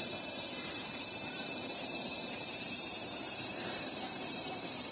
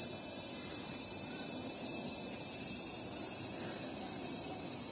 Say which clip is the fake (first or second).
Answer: first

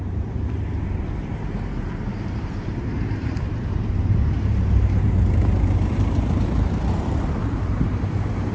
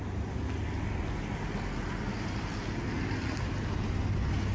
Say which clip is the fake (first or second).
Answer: first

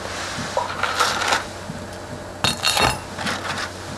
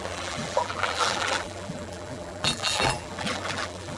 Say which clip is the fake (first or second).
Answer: second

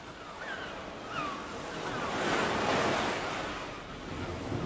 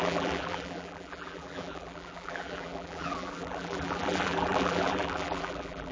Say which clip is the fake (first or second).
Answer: second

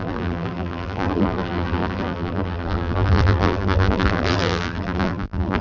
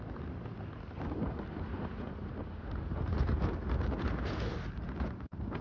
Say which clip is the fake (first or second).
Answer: first